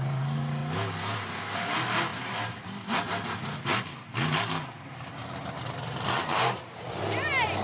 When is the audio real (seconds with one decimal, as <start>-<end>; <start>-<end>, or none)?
0.6-1.5; 2.1-6.2